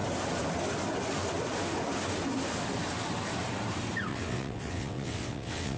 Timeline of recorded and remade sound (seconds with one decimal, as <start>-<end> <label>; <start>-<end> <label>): 0.0-4.1 recorded; 4.1-5.8 remade